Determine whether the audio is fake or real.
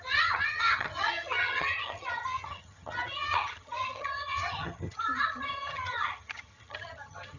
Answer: fake